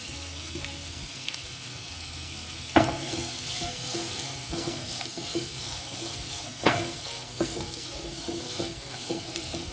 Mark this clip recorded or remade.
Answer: remade